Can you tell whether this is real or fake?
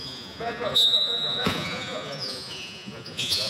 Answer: fake